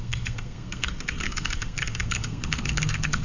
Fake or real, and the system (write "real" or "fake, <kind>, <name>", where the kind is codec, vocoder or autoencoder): fake, codec, SNAC